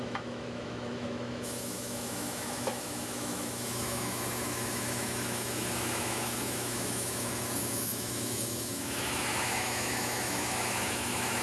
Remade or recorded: remade